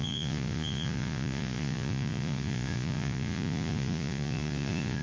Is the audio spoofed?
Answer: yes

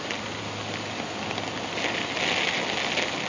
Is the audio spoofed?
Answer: no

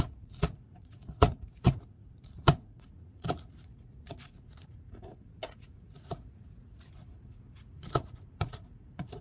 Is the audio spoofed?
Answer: yes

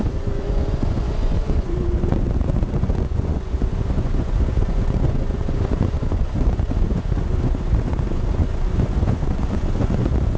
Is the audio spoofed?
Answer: yes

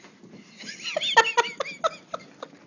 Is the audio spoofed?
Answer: no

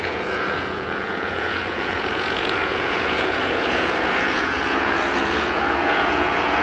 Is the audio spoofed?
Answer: yes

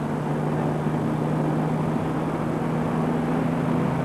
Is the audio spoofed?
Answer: no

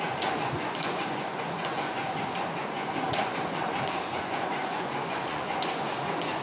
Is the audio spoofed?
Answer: yes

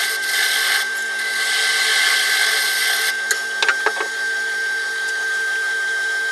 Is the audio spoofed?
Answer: no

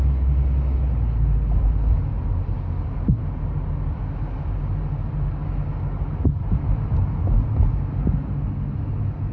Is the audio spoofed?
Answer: no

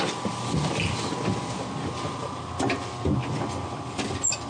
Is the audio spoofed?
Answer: no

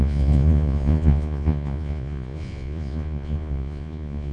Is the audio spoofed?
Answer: yes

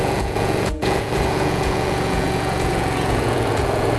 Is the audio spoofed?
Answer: yes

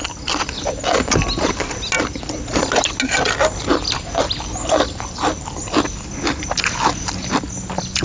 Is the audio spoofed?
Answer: no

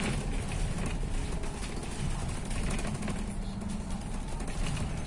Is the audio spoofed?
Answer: no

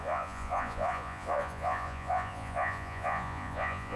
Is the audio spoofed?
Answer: yes